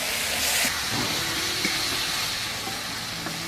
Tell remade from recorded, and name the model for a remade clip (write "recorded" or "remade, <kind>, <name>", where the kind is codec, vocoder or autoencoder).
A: recorded